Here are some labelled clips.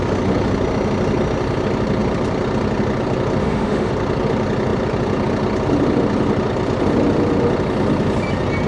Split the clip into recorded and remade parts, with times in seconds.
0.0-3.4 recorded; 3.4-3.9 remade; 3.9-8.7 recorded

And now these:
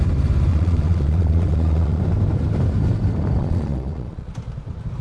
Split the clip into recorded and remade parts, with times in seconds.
0.0-0.5 recorded; 0.5-2.0 remade; 2.0-3.4 recorded; 3.4-4.3 remade; 4.3-5.0 recorded

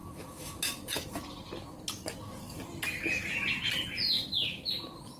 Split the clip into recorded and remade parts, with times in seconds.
0.0-0.6 remade; 0.6-5.2 recorded

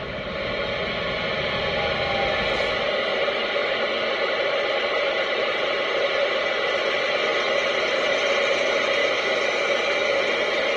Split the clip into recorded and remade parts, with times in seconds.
0.0-9.0 recorded; 9.0-10.2 remade; 10.2-10.8 recorded